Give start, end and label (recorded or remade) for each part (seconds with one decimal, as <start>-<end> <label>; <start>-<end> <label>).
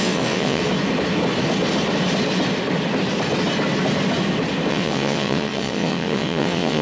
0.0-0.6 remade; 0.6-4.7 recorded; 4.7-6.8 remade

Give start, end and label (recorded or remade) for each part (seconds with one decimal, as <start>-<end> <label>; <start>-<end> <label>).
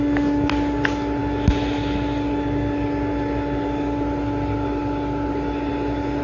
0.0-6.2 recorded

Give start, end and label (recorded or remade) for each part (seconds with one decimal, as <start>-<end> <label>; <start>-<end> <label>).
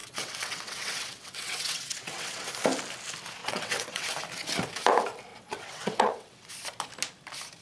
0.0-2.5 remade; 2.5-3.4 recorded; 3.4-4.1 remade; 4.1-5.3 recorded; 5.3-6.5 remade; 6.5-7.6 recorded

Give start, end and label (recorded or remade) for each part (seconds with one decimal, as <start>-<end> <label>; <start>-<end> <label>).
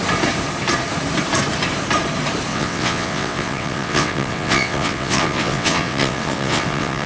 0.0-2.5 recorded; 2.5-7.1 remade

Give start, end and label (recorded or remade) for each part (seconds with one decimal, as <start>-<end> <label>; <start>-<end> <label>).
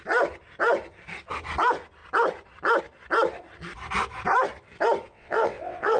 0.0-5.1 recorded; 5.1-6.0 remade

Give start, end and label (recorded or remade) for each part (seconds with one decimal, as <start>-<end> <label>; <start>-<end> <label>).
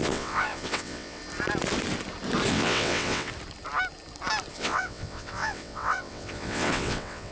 0.0-1.2 remade; 1.2-2.5 recorded; 2.5-3.3 remade; 3.3-4.5 recorded; 4.5-7.3 remade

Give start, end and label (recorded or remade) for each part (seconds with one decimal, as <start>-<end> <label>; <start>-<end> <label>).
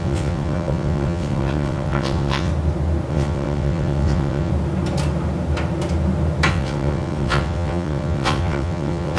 0.0-2.5 remade; 2.5-3.1 recorded; 3.1-4.5 remade; 4.5-6.5 recorded; 6.5-9.2 remade